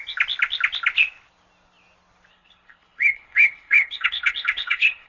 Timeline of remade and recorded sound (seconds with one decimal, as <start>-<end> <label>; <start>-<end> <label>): 0.0-2.3 recorded; 2.3-5.1 remade